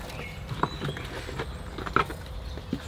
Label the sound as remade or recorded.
recorded